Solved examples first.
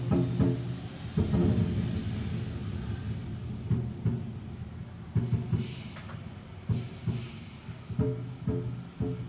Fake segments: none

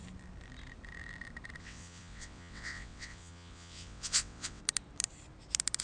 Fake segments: 1.6-4.6 (vocoder, WaveNeXt)

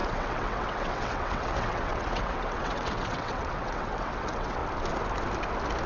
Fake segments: 0.0-4.6 (vocoder, WaveNeXt)